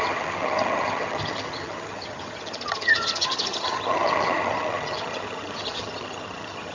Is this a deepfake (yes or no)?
yes